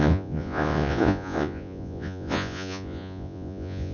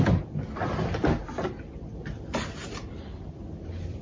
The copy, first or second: first